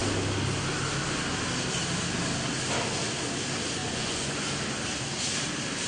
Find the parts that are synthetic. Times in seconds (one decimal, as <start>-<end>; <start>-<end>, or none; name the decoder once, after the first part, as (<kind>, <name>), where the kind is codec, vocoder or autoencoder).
3.8-4.5 (vocoder, Vocos)

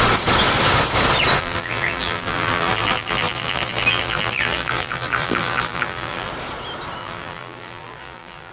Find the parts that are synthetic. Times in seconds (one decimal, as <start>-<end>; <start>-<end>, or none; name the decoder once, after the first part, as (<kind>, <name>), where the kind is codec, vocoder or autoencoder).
1.4-6.3 (vocoder, BigVGAN v2); 7.0-8.5

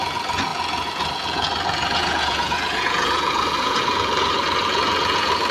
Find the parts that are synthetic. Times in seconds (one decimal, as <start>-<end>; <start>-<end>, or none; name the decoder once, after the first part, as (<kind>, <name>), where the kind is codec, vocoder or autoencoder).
0.0-5.5 (vocoder, Vocos)

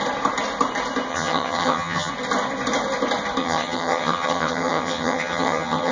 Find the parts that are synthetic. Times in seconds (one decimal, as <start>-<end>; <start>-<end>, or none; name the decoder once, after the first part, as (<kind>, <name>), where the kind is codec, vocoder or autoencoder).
1.1-2.1 (vocoder, HiFi-GAN); 3.4-5.9

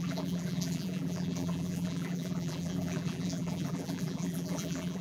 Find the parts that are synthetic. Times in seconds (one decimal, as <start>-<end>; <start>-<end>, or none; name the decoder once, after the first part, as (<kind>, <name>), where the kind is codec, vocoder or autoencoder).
0.0-5.0 (vocoder, BigVGAN v2)

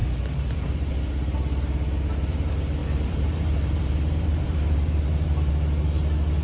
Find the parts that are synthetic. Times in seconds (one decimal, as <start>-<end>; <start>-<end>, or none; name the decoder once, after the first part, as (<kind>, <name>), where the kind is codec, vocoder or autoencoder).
0.0-0.9 (vocoder, BigVGAN v2); 2.8-5.5

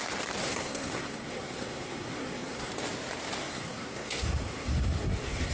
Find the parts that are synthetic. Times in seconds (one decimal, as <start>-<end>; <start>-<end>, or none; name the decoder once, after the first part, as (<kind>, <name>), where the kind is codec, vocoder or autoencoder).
0.4-2.7 (codec, SNAC); 3.4-5.5